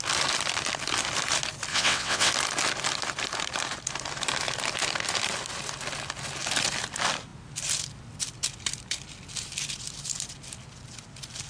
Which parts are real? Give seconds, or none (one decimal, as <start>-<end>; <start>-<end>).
0.0-1.7; 2.3-11.5